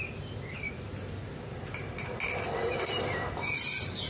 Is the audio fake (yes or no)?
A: no